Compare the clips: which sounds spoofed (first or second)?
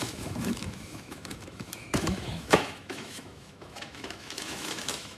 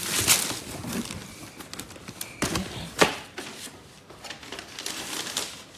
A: first